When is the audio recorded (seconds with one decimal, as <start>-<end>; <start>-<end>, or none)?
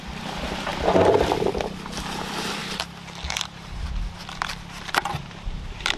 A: 0.7-1.5; 2.6-4.2